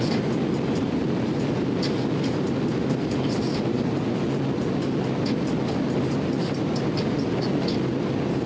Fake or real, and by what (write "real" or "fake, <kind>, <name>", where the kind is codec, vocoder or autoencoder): real